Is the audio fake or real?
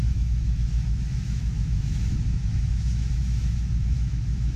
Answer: fake